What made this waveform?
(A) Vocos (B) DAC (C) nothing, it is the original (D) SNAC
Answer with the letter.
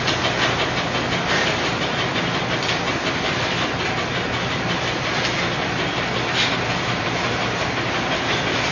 C